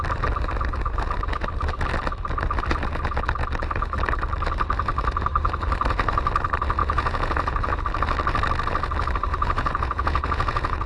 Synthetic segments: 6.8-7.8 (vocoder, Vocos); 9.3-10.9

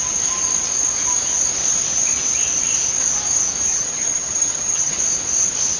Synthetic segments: 3.7-5.0 (vocoder, HiFi-GAN)